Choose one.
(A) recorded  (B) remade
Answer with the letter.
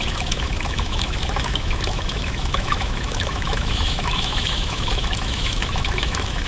B